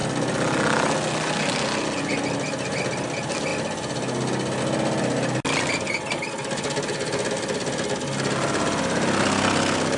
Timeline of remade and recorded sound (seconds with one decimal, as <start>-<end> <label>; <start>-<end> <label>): 0.0-10.0 recorded